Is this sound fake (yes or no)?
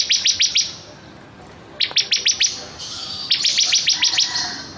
no